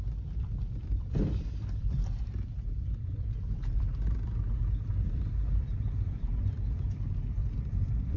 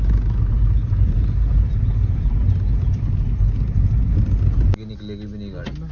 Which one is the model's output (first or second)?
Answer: first